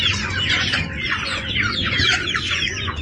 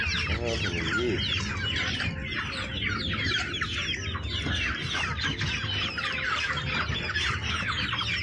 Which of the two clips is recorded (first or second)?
second